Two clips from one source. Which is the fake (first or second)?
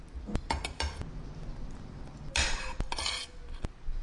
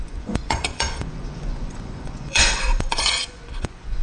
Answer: second